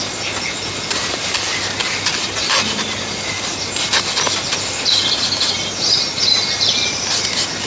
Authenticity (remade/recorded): recorded